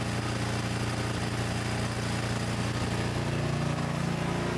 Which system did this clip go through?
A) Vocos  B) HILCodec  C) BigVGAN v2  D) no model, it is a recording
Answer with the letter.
D